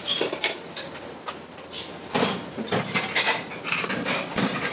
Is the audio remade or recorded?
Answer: recorded